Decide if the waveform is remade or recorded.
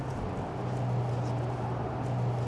recorded